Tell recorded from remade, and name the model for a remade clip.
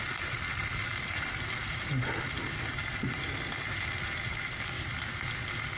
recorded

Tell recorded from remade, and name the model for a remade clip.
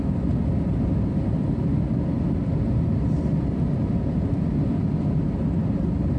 recorded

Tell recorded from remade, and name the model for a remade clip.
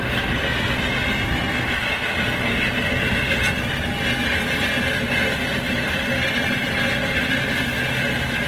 recorded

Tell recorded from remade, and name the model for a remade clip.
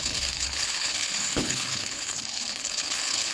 remade, codec, HILCodec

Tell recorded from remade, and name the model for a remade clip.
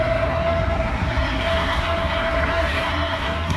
remade, codec, SNAC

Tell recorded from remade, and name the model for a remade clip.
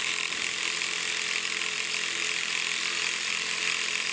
remade, vocoder, BigVGAN v2